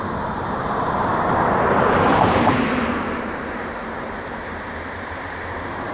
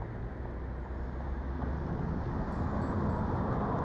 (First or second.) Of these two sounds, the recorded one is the second